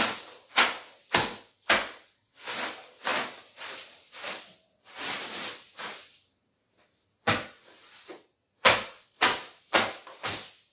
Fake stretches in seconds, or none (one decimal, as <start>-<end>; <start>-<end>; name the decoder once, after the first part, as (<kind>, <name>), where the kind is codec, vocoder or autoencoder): none